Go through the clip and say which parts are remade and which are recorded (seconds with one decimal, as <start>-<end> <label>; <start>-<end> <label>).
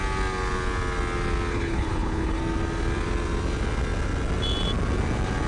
0.0-1.5 recorded; 1.5-2.4 remade; 2.4-5.5 recorded